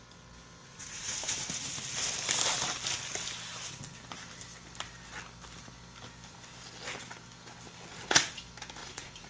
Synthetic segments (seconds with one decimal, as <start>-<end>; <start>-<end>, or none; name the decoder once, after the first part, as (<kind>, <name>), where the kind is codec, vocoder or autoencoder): 0.6-1.8 (vocoder, Vocos); 7.9-8.4; 8.8-9.3